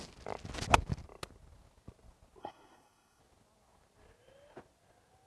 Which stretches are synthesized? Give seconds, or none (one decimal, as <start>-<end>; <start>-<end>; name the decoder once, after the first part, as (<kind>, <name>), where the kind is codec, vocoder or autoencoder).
2.4-3.2 (codec, SNAC)